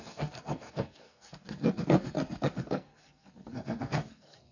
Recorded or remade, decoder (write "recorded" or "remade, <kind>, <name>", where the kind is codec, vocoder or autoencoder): remade, codec, SNAC